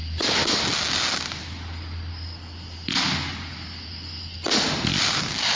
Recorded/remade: recorded